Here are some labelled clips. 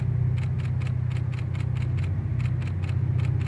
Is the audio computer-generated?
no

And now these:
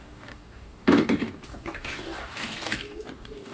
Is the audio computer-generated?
yes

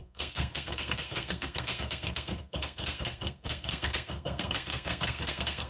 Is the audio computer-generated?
yes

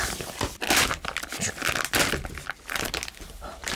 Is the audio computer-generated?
no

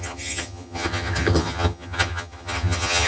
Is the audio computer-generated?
yes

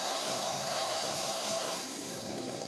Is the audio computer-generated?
yes